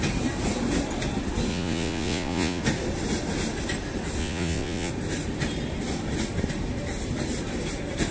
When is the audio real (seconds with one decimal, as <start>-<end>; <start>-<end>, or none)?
0.0-1.5; 2.6-4.2; 4.9-8.1